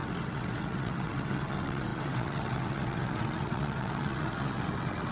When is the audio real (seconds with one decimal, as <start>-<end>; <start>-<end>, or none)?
none